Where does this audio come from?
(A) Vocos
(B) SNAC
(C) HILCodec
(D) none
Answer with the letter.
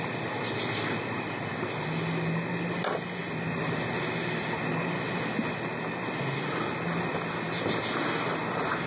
D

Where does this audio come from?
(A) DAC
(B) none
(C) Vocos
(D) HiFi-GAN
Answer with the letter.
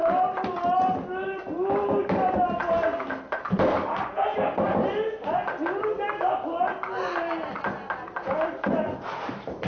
B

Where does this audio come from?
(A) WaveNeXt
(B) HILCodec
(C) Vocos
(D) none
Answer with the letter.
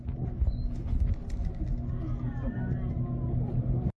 D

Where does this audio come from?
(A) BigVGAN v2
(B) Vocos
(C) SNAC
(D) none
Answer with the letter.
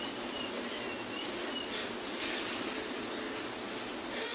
D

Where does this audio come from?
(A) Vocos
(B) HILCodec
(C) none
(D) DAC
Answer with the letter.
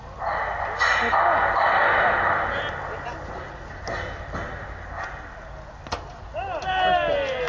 C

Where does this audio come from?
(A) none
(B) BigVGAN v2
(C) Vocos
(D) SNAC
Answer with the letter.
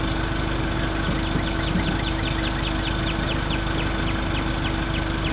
A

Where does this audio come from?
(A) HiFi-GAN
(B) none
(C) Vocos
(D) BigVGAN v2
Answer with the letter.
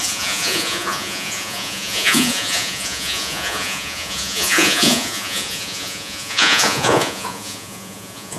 C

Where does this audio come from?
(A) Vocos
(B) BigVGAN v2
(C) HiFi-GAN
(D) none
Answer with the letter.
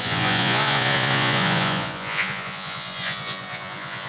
A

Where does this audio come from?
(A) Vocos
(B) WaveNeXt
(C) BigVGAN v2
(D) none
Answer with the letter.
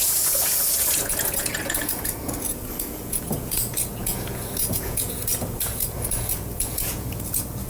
A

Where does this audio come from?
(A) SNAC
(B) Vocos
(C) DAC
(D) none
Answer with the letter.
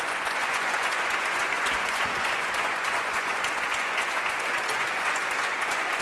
B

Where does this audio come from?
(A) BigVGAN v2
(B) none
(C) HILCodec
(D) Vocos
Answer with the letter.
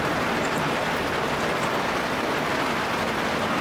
B